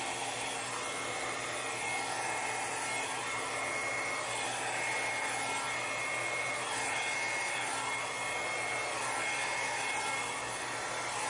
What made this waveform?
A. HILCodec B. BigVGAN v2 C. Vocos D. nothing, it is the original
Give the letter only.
D